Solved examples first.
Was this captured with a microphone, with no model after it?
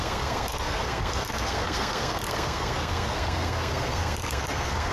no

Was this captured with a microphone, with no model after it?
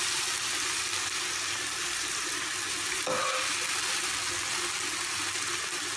yes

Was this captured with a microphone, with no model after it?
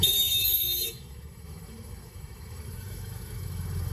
no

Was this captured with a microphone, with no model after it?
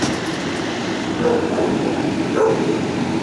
yes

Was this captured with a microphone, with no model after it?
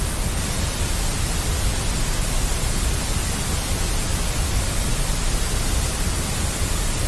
yes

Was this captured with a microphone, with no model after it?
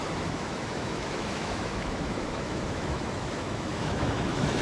no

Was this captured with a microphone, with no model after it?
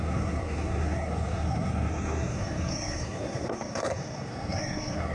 no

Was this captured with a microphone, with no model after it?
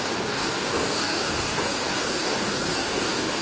no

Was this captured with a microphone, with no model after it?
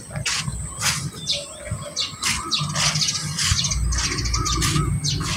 yes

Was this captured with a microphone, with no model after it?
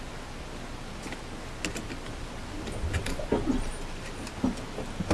yes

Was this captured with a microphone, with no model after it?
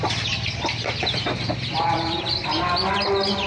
yes